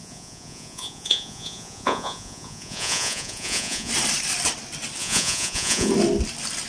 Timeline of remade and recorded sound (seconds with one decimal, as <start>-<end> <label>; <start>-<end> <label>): 0.0-3.9 remade; 3.9-5.0 recorded; 5.0-5.9 remade; 5.9-6.7 recorded